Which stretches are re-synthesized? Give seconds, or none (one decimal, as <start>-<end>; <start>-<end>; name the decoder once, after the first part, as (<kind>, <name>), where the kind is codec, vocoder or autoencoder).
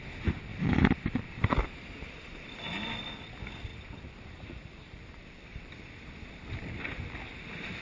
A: 0.5-2.6 (vocoder, BigVGAN v2); 3.7-6.3